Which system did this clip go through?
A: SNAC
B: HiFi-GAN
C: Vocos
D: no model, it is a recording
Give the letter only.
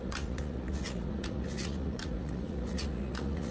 C